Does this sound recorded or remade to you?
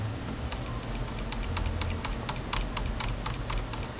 recorded